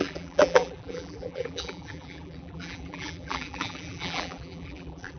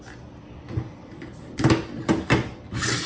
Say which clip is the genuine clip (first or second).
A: second